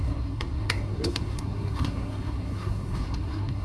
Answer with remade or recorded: remade